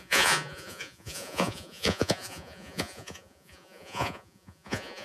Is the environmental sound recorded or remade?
remade